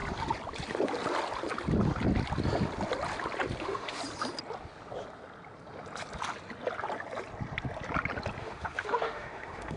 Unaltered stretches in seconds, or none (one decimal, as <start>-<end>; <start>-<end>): 0.0-3.6; 4.0-8.4